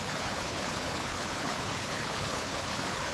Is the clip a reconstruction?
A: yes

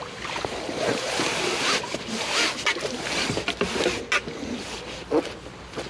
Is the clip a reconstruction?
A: no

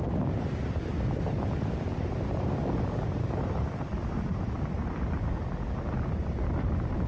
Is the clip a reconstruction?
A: yes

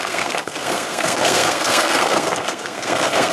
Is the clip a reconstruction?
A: yes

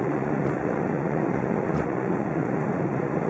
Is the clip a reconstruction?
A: yes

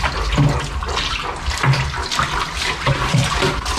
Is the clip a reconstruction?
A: no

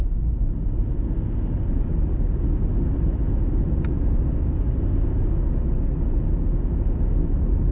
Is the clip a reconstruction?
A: no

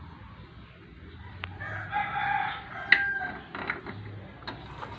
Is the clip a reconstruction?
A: no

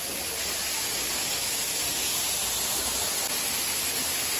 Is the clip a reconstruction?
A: no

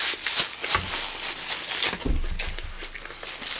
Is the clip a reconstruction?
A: no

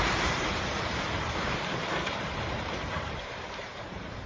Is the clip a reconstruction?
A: yes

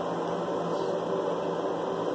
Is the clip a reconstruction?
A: no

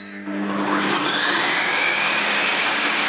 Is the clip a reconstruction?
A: yes